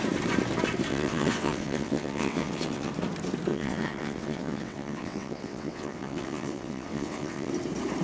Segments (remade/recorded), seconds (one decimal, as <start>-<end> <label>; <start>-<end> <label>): 0.0-0.9 recorded; 0.9-2.9 remade; 2.9-3.5 recorded; 3.5-7.5 remade; 7.5-8.0 recorded